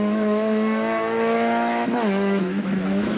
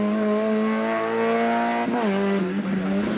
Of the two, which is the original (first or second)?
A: second